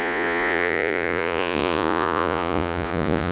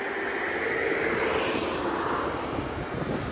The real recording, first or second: second